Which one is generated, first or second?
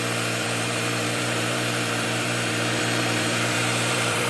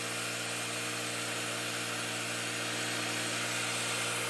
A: first